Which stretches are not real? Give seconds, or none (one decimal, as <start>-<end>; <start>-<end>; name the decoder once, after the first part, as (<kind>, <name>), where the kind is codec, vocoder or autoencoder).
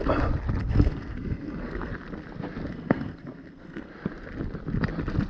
0.6-1.9 (codec, SNAC); 2.7-3.9